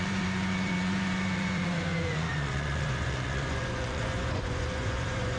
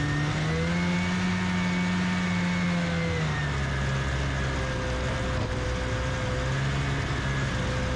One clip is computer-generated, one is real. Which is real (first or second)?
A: second